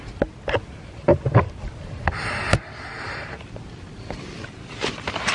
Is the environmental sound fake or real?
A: real